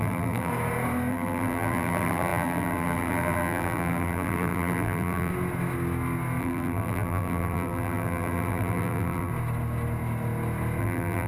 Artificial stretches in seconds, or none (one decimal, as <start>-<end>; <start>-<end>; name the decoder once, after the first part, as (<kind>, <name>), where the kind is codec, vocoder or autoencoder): 0.0-0.5 (vocoder, BigVGAN v2); 1.1-5.3; 6.4-9.3; 10.8-11.3